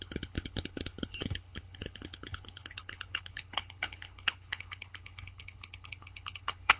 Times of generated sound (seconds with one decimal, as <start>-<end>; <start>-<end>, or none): 0.0-6.8